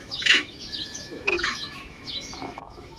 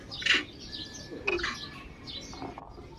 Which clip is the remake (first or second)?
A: first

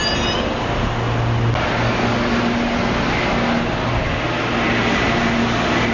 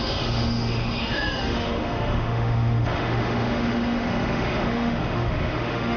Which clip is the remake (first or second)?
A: second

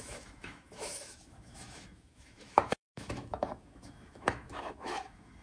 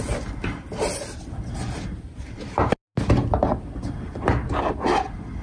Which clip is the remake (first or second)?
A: first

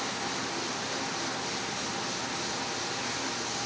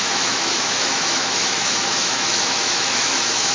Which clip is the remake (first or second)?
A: second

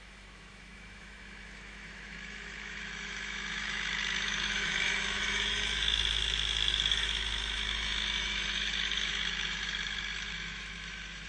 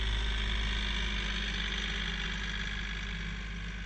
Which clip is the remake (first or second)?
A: first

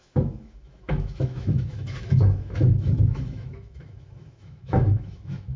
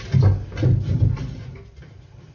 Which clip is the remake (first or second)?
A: first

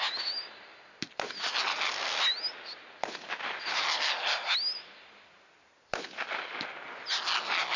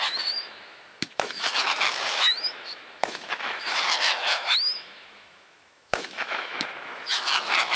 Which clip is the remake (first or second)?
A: second